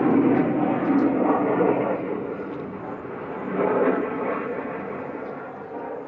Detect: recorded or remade recorded